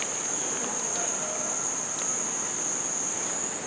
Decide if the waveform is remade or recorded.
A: recorded